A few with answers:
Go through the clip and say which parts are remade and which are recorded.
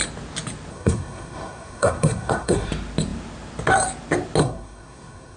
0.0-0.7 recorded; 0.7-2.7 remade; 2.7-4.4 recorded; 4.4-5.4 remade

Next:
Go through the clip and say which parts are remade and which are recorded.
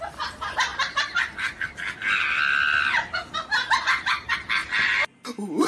0.0-5.7 recorded